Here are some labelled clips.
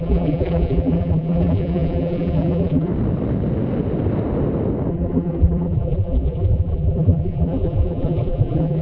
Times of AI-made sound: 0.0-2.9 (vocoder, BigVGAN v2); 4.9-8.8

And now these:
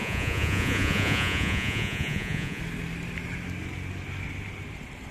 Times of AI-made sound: 0.0-2.6 (vocoder, Vocos)

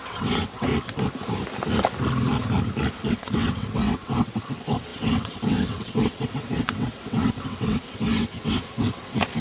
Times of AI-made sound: 0.0-0.7 (vocoder, WaveNeXt); 3.1-9.4

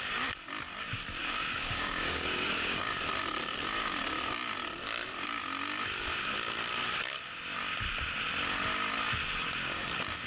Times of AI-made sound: 1.2-2.8 (codec, DAC)